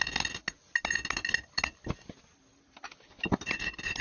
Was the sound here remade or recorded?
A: recorded